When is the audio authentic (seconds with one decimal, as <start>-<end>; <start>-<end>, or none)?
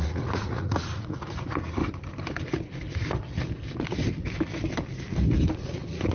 1.8-5.5